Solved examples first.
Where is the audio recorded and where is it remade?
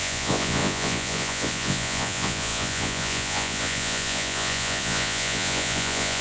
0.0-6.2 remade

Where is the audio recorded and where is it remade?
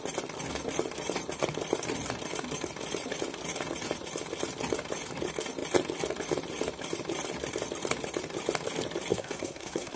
0.0-9.1 recorded; 9.1-10.0 remade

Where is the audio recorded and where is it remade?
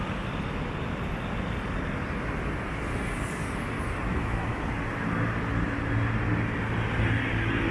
0.0-4.1 recorded; 4.1-4.7 remade; 4.7-7.7 recorded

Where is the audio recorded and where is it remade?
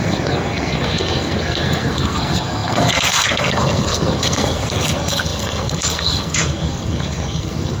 0.0-7.8 remade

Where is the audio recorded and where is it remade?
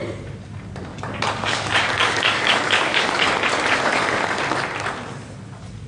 0.0-0.9 recorded; 0.9-4.4 remade; 4.4-5.9 recorded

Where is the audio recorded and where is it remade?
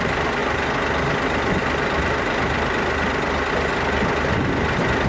0.0-5.1 recorded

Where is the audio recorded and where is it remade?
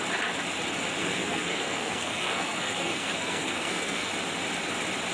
0.0-1.0 recorded; 1.0-4.1 remade; 4.1-5.1 recorded